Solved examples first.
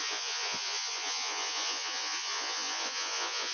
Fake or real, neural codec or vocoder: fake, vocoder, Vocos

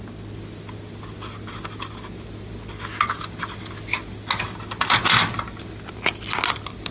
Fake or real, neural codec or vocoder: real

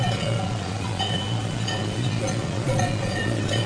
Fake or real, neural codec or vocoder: fake, vocoder, Vocos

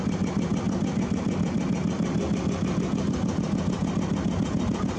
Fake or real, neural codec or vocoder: real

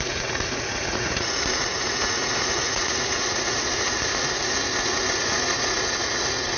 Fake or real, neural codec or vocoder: fake, vocoder, Vocos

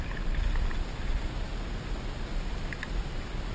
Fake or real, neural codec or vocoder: real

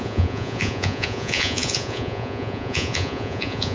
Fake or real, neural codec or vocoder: fake, vocoder, Vocos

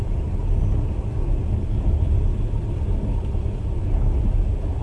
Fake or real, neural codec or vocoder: real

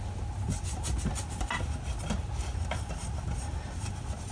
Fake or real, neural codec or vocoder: real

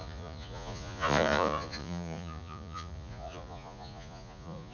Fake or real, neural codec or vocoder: fake, vocoder, Vocos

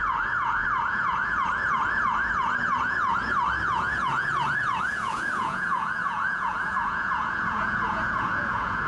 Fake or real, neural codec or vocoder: fake, vocoder, Vocos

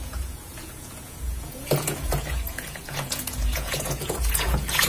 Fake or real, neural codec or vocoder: fake, vocoder, Vocos